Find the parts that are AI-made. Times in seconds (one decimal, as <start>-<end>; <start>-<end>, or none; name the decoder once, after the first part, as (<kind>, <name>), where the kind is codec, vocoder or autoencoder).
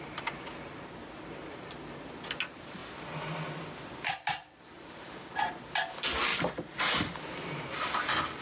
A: none